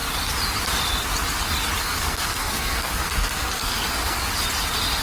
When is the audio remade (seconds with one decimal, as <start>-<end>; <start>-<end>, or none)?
1.8-4.2